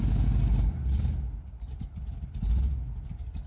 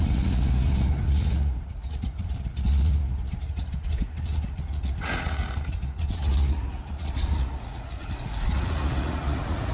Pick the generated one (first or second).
second